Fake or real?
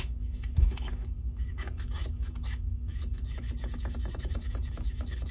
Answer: fake